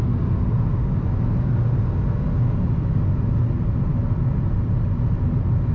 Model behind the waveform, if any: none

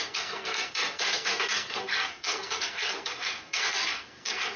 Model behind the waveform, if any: codec, SNAC